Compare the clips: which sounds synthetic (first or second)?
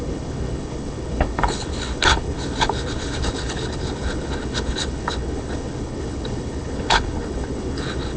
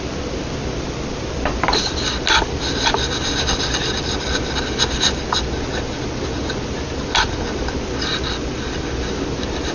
first